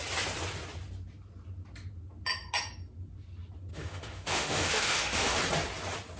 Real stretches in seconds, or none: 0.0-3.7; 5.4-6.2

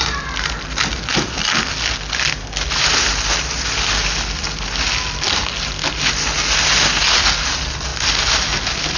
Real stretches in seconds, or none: 0.0-9.0

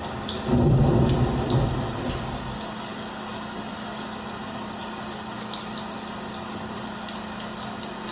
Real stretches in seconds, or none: 0.0-8.1

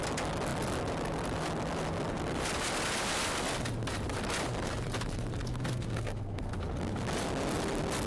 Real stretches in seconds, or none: 0.0-5.5; 6.5-8.1

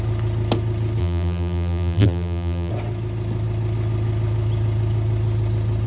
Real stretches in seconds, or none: 0.0-1.0; 2.7-5.9

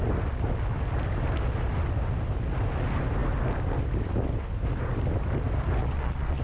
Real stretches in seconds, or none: 0.0-5.8

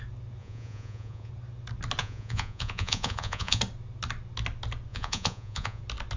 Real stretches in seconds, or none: 0.0-0.4; 1.3-2.0; 3.6-4.9; 5.8-6.2